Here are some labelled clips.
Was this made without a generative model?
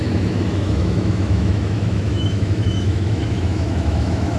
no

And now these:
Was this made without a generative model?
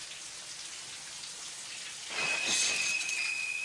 yes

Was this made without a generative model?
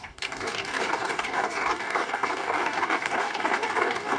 no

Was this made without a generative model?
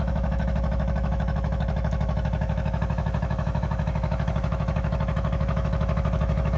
no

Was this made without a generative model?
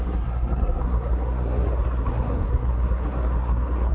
no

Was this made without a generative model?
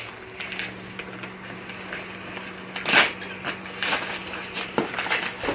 yes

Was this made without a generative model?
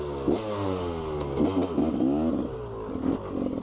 yes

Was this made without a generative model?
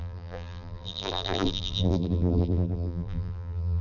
no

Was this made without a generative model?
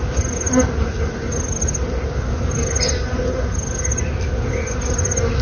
yes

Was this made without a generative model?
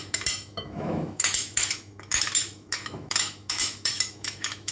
no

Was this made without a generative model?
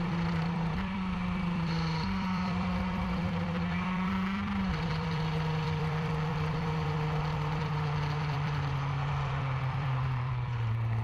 no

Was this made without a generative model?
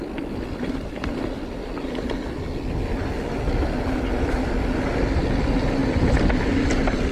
yes